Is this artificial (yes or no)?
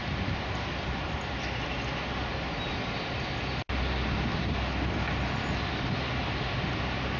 no